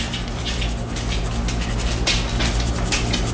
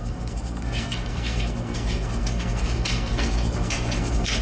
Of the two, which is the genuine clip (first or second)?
first